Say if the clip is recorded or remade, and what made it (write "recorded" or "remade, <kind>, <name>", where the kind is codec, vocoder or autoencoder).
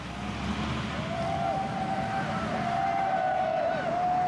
recorded